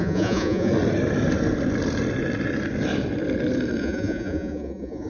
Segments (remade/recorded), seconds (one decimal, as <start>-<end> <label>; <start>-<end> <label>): 0.0-0.7 remade; 0.7-3.8 recorded; 3.8-5.1 remade